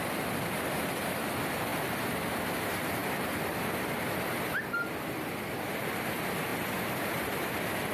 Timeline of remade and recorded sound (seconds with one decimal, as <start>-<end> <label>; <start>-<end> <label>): 0.0-7.9 recorded